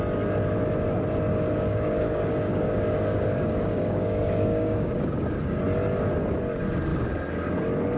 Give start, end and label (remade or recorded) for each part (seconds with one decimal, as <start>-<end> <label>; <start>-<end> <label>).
0.0-1.3 recorded; 1.3-5.4 remade; 5.4-8.0 recorded